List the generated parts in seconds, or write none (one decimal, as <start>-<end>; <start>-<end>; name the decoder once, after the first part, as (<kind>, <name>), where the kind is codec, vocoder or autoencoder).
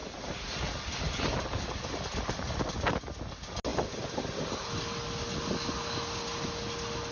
none